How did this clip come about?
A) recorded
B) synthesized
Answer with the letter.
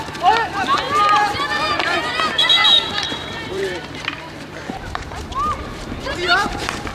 B